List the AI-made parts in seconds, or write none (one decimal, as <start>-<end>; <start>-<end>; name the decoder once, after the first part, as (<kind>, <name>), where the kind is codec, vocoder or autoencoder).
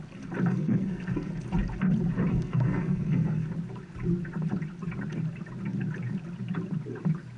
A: 0.5-1.3 (codec, SNAC); 2.3-3.5